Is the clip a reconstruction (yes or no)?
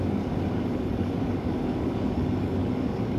yes